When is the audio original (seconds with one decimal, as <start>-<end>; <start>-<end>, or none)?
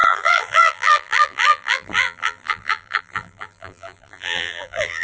none